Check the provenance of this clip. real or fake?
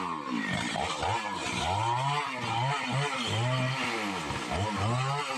real